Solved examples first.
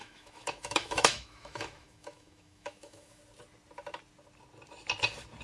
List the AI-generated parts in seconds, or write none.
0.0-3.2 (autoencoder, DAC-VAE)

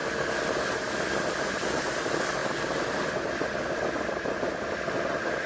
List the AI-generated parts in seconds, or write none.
none

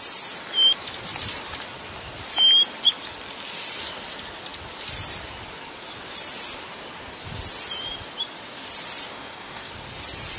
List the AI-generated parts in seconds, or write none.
9.1-9.7 (codec, DAC)

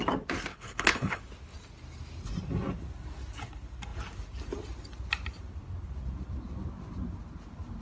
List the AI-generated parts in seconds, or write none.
0.5-1.2 (codec, HILCodec)